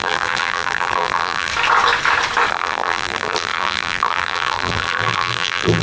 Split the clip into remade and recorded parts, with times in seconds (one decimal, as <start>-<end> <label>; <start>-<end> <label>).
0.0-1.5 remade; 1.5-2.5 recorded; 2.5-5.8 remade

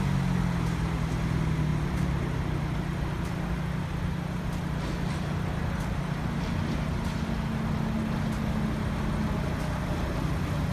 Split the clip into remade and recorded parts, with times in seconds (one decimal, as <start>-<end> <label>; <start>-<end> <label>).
0.0-10.7 recorded

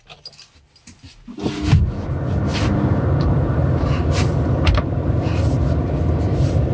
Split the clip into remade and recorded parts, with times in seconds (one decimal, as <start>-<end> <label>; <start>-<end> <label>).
0.0-6.7 recorded

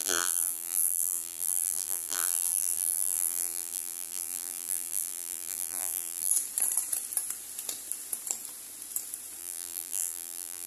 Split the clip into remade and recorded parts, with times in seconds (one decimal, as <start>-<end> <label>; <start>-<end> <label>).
0.0-6.3 remade; 6.3-9.4 recorded; 9.4-10.7 remade

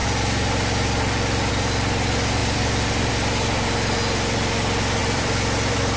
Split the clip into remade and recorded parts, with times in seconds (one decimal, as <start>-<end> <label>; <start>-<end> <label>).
0.0-2.4 recorded; 2.4-3.1 remade; 3.1-5.0 recorded; 5.0-6.0 remade

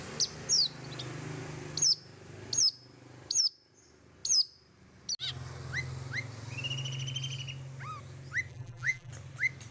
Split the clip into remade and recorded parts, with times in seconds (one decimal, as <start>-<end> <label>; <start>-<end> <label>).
0.0-8.5 recorded; 8.5-9.1 remade; 9.1-9.7 recorded

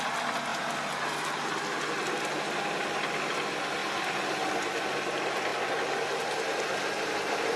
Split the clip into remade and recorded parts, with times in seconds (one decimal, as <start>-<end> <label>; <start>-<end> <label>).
0.0-7.6 recorded